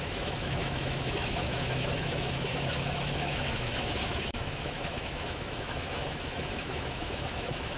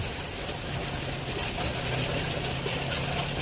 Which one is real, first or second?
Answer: second